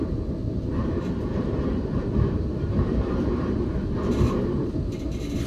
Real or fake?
fake